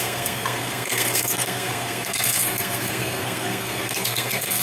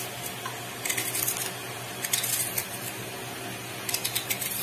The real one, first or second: second